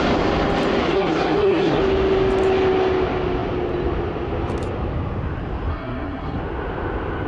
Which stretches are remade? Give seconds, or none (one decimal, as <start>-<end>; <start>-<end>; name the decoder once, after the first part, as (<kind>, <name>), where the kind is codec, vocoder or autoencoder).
0.8-1.8 (codec, SNAC); 5.7-6.4

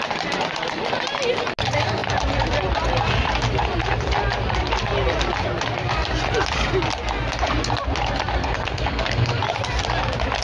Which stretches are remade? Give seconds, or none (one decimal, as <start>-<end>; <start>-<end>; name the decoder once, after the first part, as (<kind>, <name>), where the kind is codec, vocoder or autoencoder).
8.4-9.4 (codec, SNAC)

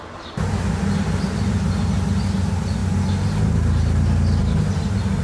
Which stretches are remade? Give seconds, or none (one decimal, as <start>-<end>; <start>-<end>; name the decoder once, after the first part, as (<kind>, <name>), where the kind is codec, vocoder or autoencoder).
none

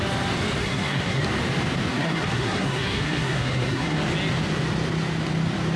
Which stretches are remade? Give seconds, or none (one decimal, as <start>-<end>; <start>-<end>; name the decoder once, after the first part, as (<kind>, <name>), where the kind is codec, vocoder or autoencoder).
0.6-1.2 (codec, SNAC); 1.9-4.0

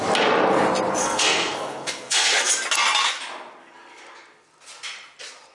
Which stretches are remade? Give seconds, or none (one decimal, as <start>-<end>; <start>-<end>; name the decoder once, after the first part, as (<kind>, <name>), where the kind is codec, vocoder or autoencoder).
1.0-2.5 (codec, SNAC)